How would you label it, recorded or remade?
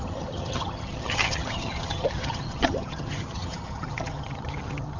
remade